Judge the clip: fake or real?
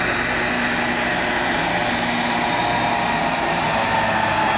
real